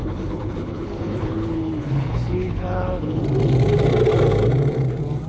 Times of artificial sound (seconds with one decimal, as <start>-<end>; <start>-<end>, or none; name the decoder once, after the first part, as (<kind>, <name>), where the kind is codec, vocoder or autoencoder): 0.0-3.2 (codec, HILCodec)